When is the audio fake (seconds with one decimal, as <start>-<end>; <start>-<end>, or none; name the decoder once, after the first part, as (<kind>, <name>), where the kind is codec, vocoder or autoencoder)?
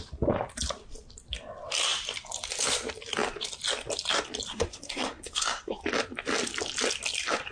4.5-5.8 (codec, SNAC)